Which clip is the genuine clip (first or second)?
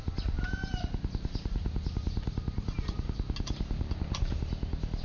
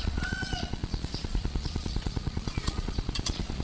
first